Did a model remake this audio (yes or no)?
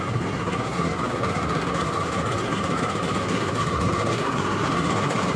yes